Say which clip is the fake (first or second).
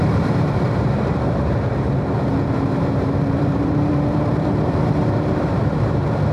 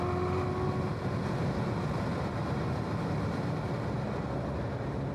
first